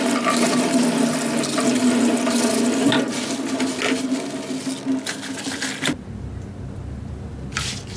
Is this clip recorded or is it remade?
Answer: recorded